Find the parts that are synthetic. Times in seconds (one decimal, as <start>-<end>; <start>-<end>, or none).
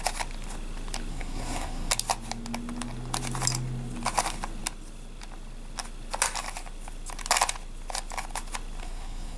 1.1-1.9; 8.8-9.4